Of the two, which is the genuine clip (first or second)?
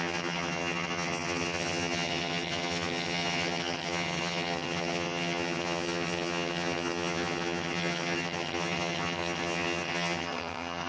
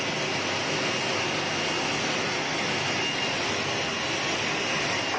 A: second